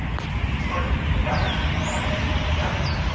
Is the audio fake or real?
fake